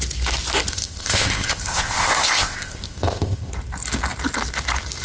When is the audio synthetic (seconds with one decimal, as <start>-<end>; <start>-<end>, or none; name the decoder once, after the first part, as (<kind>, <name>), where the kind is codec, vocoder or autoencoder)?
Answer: 0.7-3.5 (codec, ZipCodec)